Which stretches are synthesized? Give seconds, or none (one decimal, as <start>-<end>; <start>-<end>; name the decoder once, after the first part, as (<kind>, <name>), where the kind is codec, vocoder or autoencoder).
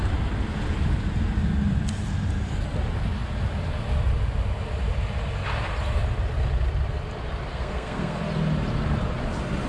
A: 7.5-8.2 (codec, SNAC)